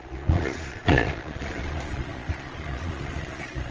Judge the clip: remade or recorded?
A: remade